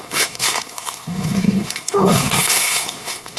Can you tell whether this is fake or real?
fake